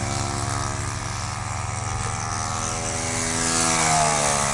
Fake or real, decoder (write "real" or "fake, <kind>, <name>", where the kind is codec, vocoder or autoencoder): real